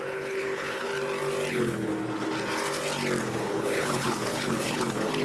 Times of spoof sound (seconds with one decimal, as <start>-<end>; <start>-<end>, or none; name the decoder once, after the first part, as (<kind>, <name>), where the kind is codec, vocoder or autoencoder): 0.0-0.9 (codec, HILCodec); 1.5-1.9; 3.2-5.2